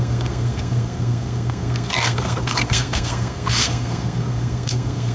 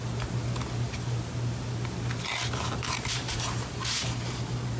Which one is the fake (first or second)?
first